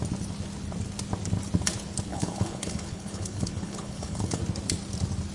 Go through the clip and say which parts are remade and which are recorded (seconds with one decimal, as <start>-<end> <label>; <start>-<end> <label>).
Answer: 0.0-2.1 recorded; 2.1-4.4 remade; 4.4-5.3 recorded